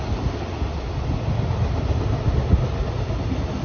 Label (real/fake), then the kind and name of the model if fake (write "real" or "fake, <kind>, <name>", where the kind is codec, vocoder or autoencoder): real